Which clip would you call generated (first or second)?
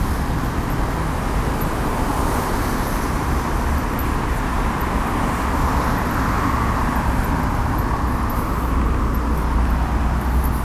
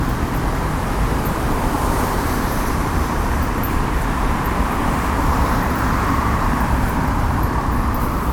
second